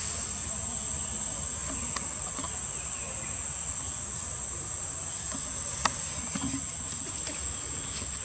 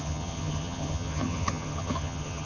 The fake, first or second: second